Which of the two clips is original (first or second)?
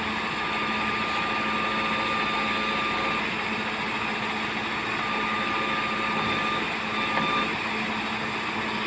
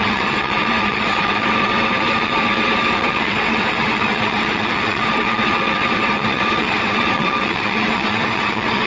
first